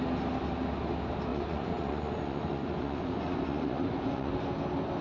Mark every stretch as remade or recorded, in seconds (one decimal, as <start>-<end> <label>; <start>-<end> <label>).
0.0-1.3 recorded; 1.3-4.3 remade; 4.3-5.0 recorded